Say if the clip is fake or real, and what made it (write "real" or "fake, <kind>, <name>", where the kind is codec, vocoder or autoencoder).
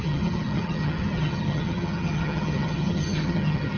fake, vocoder, HiFi-GAN